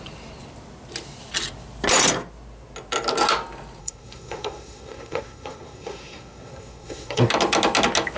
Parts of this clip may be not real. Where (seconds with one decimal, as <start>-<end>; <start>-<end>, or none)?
3.8-7.2